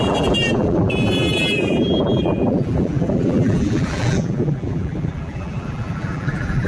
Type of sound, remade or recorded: remade